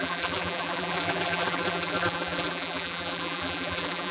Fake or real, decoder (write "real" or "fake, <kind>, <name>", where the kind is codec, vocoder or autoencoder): fake, vocoder, BigVGAN v2